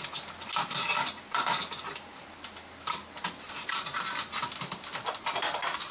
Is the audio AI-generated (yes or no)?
no